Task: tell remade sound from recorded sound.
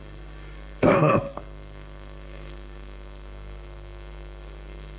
remade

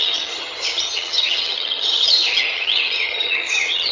remade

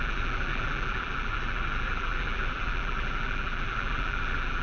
remade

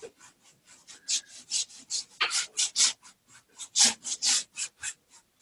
recorded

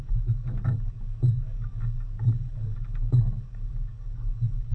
remade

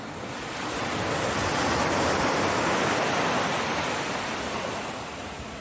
recorded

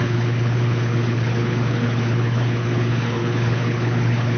remade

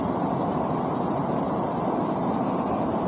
recorded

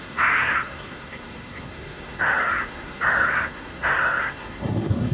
remade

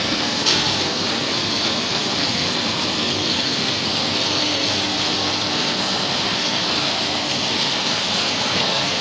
remade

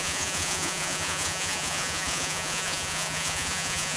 remade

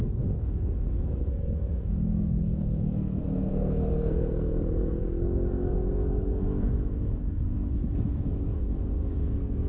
remade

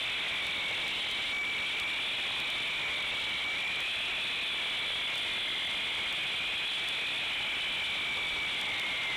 recorded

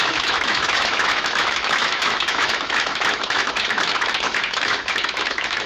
remade